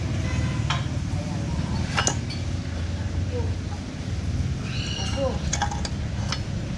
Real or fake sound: real